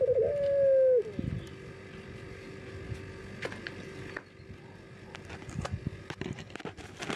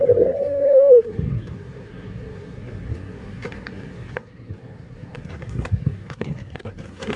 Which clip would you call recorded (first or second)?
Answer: first